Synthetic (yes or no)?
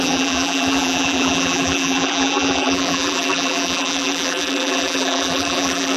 yes